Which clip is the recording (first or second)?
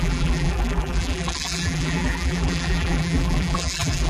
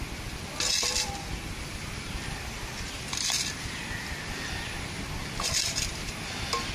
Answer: second